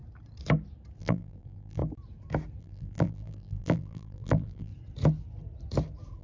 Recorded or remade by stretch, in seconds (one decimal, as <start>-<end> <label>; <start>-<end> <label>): 0.0-1.0 recorded; 1.0-1.8 remade; 1.8-2.6 recorded; 2.6-4.7 remade; 4.7-6.2 recorded